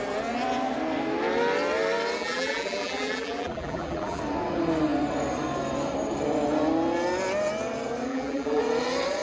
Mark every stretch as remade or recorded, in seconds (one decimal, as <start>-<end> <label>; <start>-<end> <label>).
0.0-2.2 recorded; 2.2-4.2 remade; 4.2-8.1 recorded; 8.1-8.6 remade; 8.6-9.2 recorded